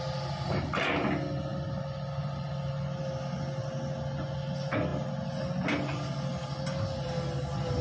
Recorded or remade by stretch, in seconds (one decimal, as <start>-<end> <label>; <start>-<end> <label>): 0.0-7.8 recorded